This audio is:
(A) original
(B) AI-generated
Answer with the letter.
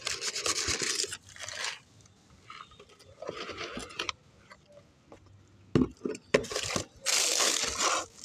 A